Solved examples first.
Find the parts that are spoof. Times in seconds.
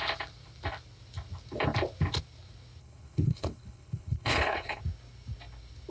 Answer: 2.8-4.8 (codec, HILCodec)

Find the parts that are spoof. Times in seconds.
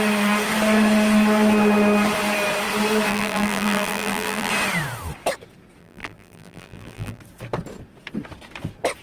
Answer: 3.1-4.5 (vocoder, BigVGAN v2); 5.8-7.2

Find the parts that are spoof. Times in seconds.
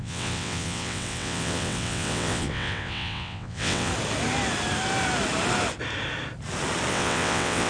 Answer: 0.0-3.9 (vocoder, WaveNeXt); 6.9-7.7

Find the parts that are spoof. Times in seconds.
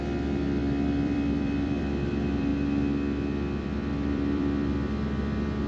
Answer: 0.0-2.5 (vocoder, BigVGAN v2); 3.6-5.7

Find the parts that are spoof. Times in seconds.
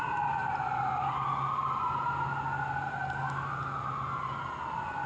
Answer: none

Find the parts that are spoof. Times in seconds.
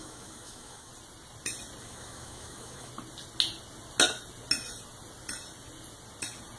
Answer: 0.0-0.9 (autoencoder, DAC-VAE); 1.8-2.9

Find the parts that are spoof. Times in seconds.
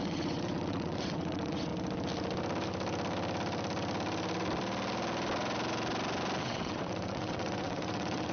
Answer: 0.0-1.7 (vocoder, WaveNeXt); 6.4-8.3